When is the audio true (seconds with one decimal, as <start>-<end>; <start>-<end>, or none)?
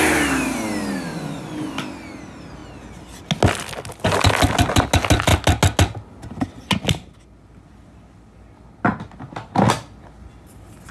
0.0-1.1; 1.7-10.9